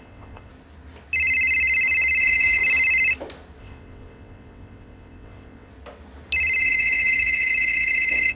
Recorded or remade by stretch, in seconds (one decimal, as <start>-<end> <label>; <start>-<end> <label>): 0.0-0.5 remade; 0.5-2.2 recorded; 2.2-2.6 remade; 2.6-3.6 recorded; 3.6-5.7 remade; 5.7-6.6 recorded; 6.6-8.3 remade